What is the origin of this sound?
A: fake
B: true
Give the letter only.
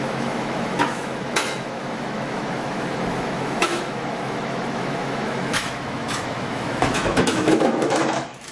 A